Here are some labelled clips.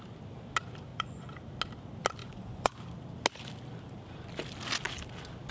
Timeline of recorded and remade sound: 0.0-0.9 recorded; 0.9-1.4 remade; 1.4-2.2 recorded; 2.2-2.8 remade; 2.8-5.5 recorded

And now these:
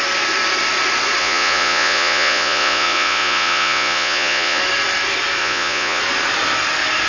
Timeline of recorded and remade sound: 0.0-1.2 recorded; 1.2-4.6 remade; 4.6-5.4 recorded; 5.4-6.0 remade; 6.0-7.1 recorded

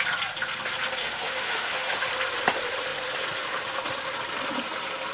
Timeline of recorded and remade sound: 0.0-1.0 recorded; 1.0-2.1 remade; 2.1-5.1 recorded

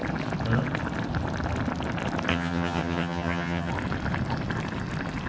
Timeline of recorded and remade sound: 0.0-2.3 recorded; 2.3-3.7 remade; 3.7-5.3 recorded

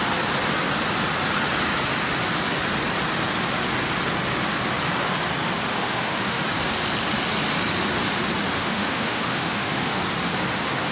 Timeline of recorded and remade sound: 0.0-5.7 recorded; 5.7-6.4 remade; 6.4-8.6 recorded; 8.6-10.0 remade; 10.0-10.9 recorded

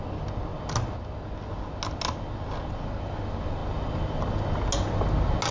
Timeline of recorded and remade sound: 0.0-5.5 recorded